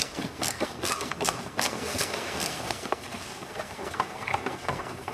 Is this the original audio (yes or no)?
no